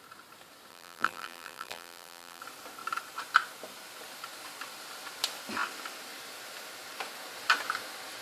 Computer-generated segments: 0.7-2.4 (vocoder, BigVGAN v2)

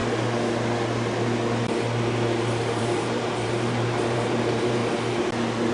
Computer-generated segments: 2.8-4.8 (vocoder, BigVGAN v2)

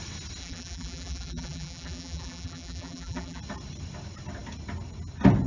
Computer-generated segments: 0.4-3.4 (vocoder, BigVGAN v2)

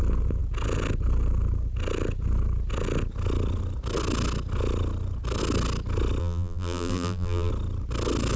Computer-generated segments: 6.2-7.5 (vocoder, BigVGAN v2)

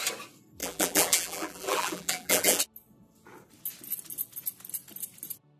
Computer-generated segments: 0.6-2.6 (vocoder, BigVGAN v2)

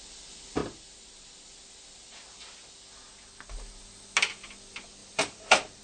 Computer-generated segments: 5.0-5.8 (vocoder, BigVGAN v2)

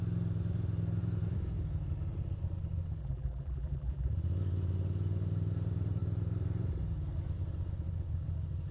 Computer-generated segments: 3.0-4.1 (vocoder, BigVGAN v2)

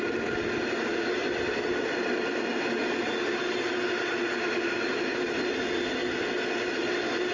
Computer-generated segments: none